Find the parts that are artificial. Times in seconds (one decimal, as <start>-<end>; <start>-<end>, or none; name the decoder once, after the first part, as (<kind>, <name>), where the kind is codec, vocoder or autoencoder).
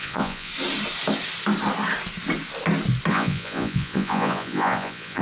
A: 0.0-0.5 (vocoder, Vocos); 3.1-5.2